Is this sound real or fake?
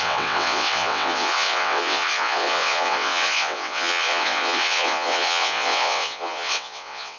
fake